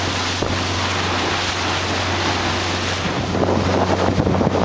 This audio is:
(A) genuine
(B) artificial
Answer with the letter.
A